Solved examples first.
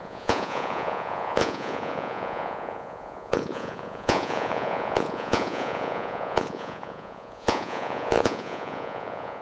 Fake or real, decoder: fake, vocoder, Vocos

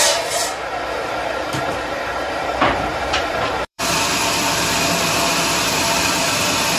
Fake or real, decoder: fake, vocoder, BigVGAN v2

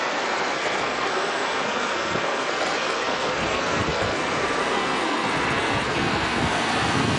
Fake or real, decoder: fake, codec, SNAC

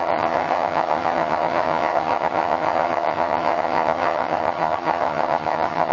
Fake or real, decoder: fake, vocoder, HiFi-GAN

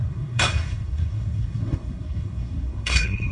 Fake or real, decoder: fake, codec, SNAC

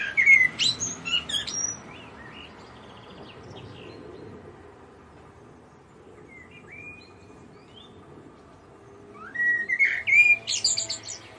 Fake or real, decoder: real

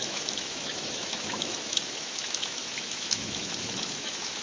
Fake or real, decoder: fake, autoencoder, DAC-VAE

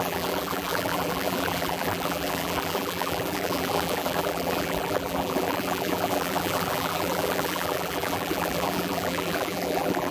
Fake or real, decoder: fake, vocoder, BigVGAN v2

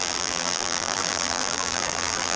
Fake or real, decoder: fake, vocoder, BigVGAN v2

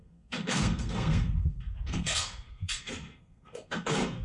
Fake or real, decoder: fake, codec, SNAC